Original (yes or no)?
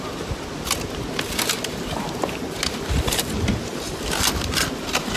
yes